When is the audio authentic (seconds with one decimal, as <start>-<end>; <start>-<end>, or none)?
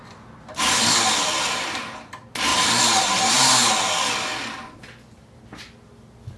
0.6-2.5; 3.7-6.4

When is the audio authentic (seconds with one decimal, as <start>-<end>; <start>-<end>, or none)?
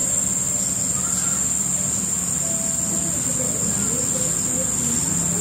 0.0-5.4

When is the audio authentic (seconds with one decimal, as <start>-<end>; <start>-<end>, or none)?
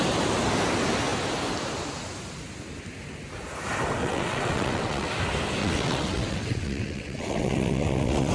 0.0-4.0; 5.1-5.6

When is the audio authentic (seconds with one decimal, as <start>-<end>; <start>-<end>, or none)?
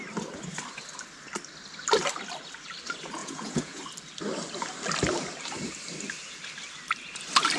0.0-3.2; 3.8-7.6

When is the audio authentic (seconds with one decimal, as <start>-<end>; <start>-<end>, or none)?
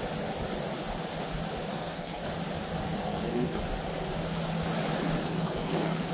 0.0-1.7; 2.3-3.0; 3.6-5.2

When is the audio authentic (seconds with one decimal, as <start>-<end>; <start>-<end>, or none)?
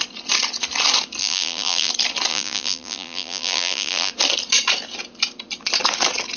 0.0-1.2; 1.9-2.3; 4.1-6.4